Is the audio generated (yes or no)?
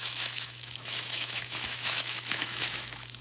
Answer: yes